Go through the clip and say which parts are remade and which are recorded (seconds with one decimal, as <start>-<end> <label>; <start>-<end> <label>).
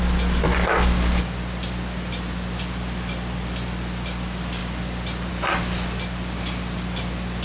0.0-0.5 recorded; 0.5-1.2 remade; 1.2-7.4 recorded